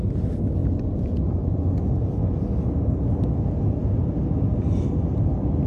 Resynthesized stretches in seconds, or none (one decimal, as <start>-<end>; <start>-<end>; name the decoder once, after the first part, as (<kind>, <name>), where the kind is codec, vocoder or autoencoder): none